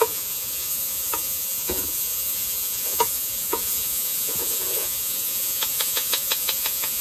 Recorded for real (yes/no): no